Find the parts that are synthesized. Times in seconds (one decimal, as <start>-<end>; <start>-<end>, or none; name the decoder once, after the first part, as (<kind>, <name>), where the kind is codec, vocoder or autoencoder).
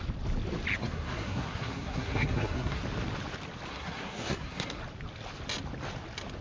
0.8-2.8 (codec, SNAC); 3.7-4.8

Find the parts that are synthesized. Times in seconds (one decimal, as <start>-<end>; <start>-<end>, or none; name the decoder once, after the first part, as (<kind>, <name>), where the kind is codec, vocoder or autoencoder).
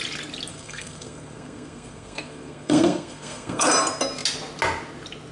0.5-3.7 (codec, SNAC)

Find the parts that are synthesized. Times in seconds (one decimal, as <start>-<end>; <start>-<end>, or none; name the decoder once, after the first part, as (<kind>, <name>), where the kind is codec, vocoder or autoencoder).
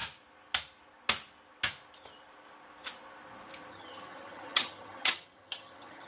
3.7-6.1 (vocoder, HiFi-GAN)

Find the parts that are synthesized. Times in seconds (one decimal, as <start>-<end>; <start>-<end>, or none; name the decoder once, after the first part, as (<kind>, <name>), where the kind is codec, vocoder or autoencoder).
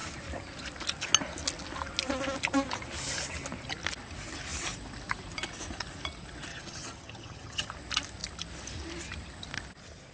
6.5-7.7 (vocoder, HiFi-GAN)